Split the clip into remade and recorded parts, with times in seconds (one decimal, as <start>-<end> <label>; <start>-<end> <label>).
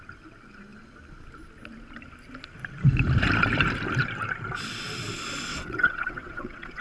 0.0-5.5 recorded; 5.5-6.8 remade